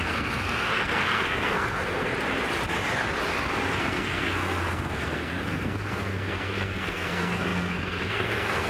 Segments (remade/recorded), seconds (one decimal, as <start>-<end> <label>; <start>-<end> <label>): 0.0-2.1 remade; 2.1-3.8 recorded; 3.8-8.7 remade